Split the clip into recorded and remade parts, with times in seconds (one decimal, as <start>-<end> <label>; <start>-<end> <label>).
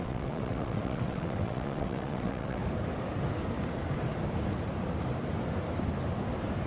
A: 0.0-2.6 remade; 2.6-6.7 recorded